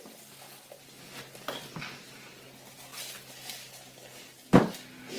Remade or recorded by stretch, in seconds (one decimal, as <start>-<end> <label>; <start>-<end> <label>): 0.0-5.2 recorded